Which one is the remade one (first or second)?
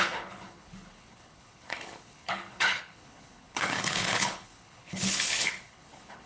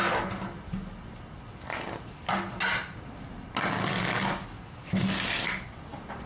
first